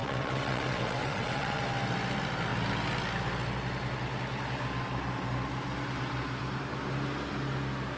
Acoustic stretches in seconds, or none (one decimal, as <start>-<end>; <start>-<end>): 1.6-8.0